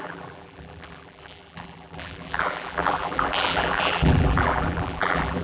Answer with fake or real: fake